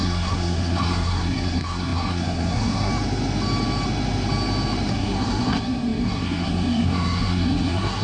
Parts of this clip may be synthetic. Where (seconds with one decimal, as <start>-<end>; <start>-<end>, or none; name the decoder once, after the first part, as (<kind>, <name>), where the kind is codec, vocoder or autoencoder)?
0.0-2.9 (codec, SNAC); 4.9-8.0